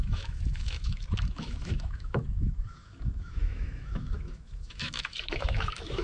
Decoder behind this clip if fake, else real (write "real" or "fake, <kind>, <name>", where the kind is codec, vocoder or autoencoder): fake, autoencoder, DAC-VAE